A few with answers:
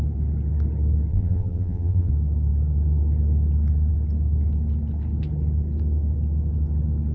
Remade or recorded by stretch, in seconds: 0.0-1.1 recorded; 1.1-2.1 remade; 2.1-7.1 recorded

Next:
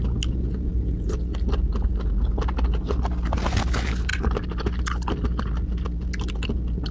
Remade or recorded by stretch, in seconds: 0.0-6.9 recorded

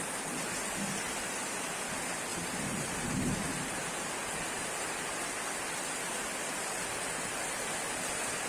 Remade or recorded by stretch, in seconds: 0.0-2.3 recorded; 2.3-3.5 remade; 3.5-8.5 recorded

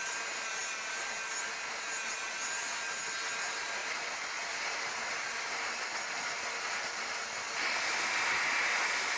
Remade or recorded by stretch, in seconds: 0.0-0.6 recorded; 0.6-1.5 remade; 1.5-3.8 recorded; 3.8-6.3 remade; 6.3-9.2 recorded

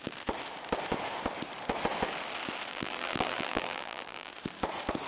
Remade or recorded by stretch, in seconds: 0.0-2.7 recorded; 2.7-4.3 remade; 4.3-5.1 recorded